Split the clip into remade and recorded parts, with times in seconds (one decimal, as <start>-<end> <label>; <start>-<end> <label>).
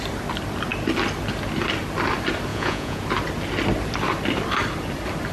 0.0-2.5 recorded; 2.5-3.0 remade; 3.0-5.3 recorded